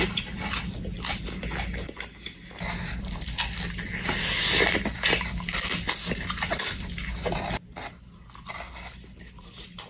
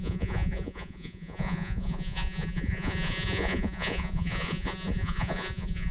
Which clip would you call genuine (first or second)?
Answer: first